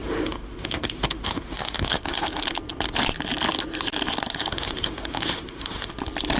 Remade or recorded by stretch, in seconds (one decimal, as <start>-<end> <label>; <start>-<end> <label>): 0.0-2.0 remade; 2.0-4.5 recorded; 4.5-5.9 remade; 5.9-6.4 recorded